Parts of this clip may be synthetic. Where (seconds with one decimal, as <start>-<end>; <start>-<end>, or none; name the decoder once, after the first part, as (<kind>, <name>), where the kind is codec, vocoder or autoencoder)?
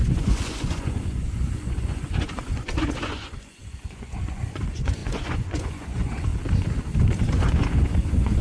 0.0-6.3 (vocoder, Vocos); 7.2-8.4